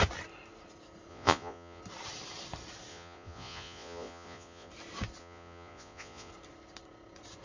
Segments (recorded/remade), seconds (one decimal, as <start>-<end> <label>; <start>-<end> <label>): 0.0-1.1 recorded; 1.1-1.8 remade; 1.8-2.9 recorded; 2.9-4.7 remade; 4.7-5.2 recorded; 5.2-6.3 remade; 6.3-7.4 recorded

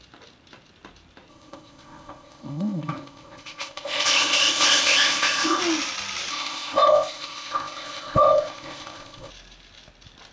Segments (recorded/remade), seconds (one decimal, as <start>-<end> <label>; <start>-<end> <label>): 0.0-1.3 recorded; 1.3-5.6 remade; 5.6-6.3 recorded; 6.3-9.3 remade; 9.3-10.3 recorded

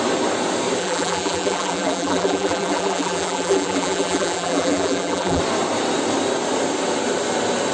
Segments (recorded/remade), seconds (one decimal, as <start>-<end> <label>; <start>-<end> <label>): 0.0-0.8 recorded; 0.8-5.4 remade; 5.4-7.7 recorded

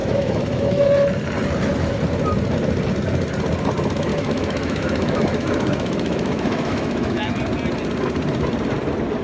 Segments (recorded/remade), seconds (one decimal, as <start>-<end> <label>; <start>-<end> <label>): 0.0-0.9 remade; 0.9-4.1 recorded; 4.1-7.4 remade; 7.4-9.2 recorded

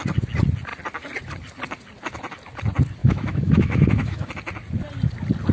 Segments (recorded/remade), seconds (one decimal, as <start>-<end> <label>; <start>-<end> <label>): 0.0-3.0 recorded; 3.0-4.3 remade; 4.3-5.5 recorded

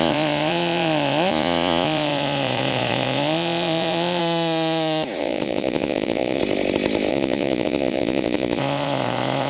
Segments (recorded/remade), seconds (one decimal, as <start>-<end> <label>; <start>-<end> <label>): 0.0-4.2 remade; 4.2-5.2 recorded; 5.2-6.4 remade; 6.4-7.1 recorded; 7.1-9.5 remade